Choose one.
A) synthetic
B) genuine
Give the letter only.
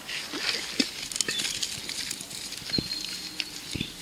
B